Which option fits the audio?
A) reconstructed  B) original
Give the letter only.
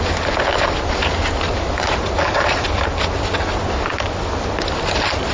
B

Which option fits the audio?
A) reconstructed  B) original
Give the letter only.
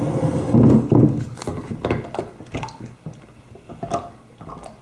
B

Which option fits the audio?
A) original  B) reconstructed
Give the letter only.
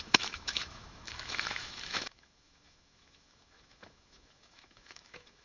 B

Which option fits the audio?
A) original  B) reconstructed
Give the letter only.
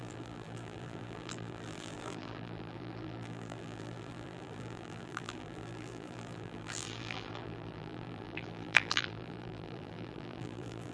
B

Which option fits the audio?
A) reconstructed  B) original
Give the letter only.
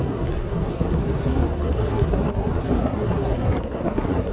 A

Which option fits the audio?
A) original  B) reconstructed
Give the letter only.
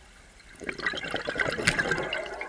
A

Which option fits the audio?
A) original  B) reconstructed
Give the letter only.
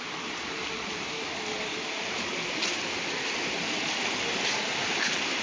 A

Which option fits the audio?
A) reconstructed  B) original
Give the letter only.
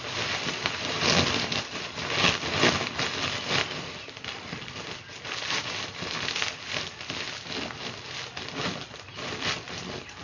B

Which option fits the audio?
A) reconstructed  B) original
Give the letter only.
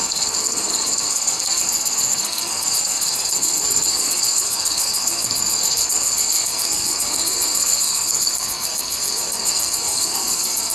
A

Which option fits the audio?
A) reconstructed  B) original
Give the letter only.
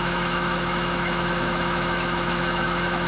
A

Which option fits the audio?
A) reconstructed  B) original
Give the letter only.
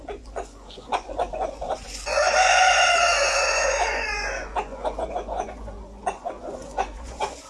A